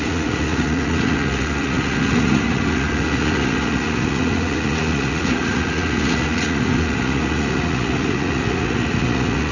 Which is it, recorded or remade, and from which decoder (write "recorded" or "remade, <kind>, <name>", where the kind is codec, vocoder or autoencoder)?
remade, vocoder, Vocos